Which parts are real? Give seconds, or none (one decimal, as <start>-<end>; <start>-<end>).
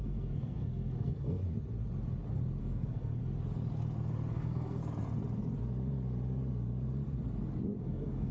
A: 1.4-2.6; 3.2-4.3; 4.8-7.8